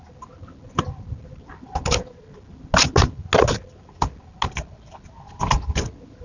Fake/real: real